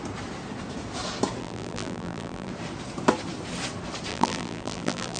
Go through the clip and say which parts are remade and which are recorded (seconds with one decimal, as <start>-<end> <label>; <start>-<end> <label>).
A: 0.0-1.4 recorded; 1.4-2.5 remade; 2.5-4.1 recorded; 4.1-5.2 remade